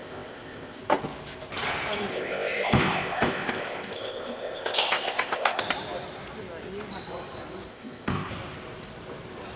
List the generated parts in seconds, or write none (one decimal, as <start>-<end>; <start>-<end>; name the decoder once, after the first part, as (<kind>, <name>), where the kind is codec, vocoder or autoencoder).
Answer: 0.0-0.8 (codec, ZipCodec); 2.1-5.6; 7.7-8.3